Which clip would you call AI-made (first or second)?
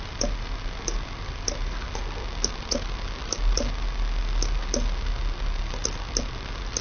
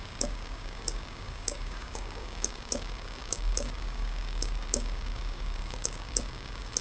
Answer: second